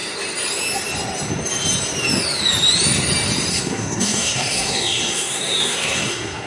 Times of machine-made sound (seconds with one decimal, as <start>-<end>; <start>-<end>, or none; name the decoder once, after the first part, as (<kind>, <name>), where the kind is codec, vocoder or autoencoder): 3.5-6.5 (codec, SNAC)